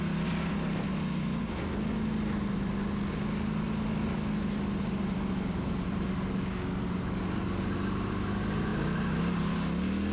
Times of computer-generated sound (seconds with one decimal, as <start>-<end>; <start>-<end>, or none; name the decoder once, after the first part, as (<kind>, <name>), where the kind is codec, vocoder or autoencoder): none